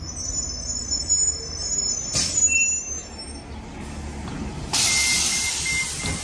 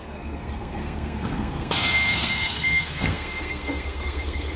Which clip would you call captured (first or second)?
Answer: first